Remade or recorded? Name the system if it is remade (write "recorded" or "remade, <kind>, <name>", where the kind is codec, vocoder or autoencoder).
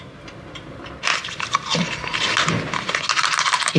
recorded